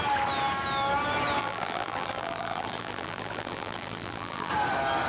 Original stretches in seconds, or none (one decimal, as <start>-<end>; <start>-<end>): 0.0-1.4; 4.5-5.1

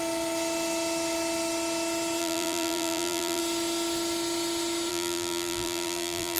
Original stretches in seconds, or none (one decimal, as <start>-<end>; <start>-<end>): 0.0-2.2; 3.4-4.9